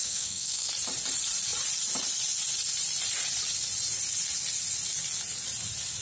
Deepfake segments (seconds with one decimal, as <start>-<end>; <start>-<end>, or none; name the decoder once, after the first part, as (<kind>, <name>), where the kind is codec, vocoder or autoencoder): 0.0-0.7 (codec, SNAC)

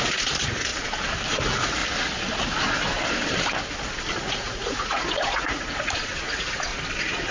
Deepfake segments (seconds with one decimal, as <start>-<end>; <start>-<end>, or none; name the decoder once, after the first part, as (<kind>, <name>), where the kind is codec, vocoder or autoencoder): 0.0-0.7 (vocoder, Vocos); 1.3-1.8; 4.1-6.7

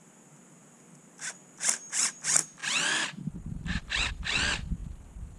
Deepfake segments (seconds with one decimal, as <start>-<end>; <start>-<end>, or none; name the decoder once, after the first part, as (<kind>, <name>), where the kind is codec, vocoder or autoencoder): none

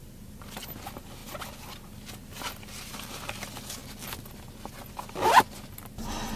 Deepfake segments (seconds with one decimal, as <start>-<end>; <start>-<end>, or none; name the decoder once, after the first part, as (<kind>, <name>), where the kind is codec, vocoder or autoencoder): none

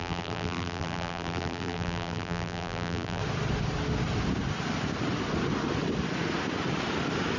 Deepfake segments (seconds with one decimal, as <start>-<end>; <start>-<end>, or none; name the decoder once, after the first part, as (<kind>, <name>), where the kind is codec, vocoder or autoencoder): 0.0-3.2 (vocoder, BigVGAN v2)

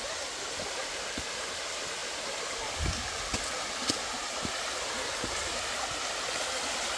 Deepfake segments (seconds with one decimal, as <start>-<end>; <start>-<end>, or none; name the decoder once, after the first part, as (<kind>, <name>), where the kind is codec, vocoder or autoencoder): none

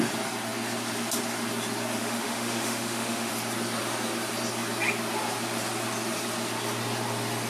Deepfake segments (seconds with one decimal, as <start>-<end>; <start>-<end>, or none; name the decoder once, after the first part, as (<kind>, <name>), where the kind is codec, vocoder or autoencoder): 2.0-3.3 (autoencoder, DAC-VAE)

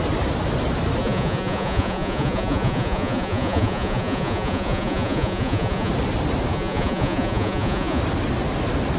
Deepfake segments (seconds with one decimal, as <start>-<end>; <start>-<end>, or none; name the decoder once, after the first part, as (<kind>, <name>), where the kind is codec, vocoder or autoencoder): 1.0-5.9 (vocoder, Vocos); 6.5-8.0